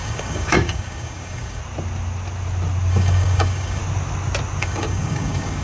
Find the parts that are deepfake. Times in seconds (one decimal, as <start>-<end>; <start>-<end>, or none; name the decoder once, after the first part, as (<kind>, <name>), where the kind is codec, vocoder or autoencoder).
0.0-1.6 (codec, DAC); 2.9-3.8; 4.6-5.6